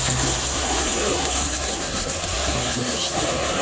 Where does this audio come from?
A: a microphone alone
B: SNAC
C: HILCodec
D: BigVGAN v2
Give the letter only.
B